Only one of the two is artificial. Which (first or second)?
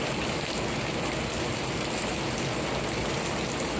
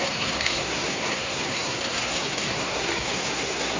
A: second